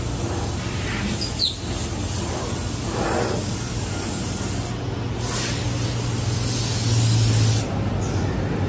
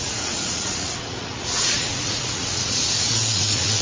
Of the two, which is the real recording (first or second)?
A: first